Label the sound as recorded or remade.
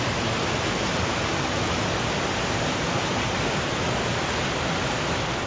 recorded